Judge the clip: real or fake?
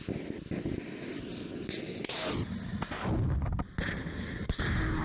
real